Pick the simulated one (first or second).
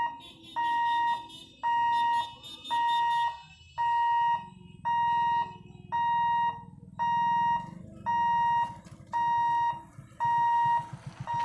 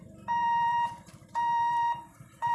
second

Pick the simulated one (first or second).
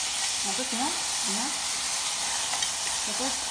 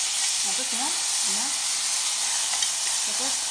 first